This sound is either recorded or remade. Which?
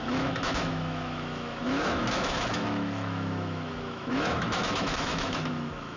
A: remade